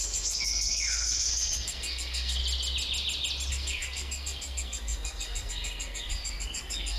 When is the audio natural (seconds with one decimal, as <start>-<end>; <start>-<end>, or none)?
2.4-3.5